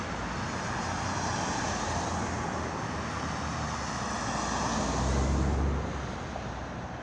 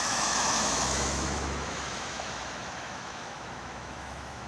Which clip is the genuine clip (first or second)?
first